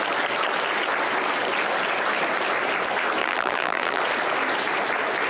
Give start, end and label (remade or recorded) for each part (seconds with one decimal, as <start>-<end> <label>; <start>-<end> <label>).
0.0-3.2 recorded; 3.2-4.0 remade; 4.0-5.3 recorded